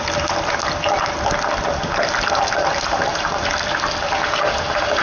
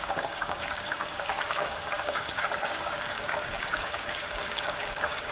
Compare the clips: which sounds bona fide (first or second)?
first